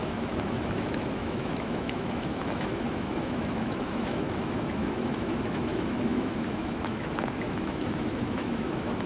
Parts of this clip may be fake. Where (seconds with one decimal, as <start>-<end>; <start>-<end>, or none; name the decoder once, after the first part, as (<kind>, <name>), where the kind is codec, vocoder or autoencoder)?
0.0-9.1 (autoencoder, DAC-VAE)